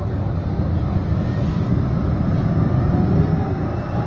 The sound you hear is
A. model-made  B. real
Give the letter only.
B